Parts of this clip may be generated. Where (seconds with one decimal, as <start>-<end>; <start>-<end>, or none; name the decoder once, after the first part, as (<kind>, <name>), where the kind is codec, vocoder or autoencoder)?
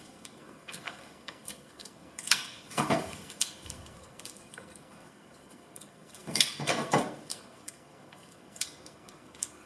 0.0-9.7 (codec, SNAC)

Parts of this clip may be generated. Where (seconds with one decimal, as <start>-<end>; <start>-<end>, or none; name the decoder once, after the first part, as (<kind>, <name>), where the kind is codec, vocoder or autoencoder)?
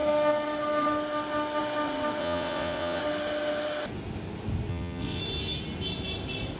2.2-3.0 (vocoder, WaveNeXt); 4.7-5.2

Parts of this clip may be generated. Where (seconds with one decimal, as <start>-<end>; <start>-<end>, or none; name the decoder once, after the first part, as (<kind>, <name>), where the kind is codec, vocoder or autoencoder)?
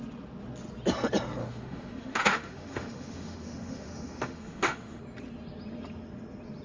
1.4-5.0 (autoencoder, DAC-VAE)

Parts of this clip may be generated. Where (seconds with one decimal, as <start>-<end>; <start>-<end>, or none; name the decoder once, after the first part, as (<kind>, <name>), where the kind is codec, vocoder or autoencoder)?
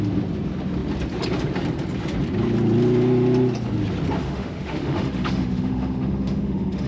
4.2-6.9 (autoencoder, DAC-VAE)